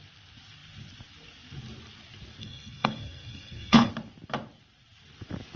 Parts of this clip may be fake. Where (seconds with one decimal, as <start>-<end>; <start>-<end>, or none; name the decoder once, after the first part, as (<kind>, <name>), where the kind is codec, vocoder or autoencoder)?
2.4-3.9 (codec, SNAC)